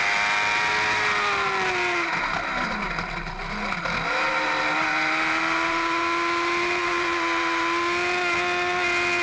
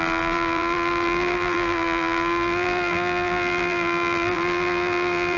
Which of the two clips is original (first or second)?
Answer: first